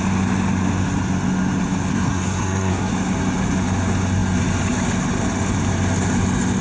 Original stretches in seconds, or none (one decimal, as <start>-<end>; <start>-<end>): 0.0-1.9; 2.9-6.6